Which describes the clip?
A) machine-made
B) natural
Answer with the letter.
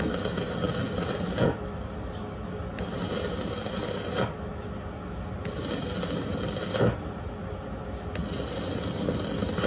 B